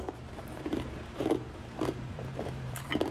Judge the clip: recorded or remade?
remade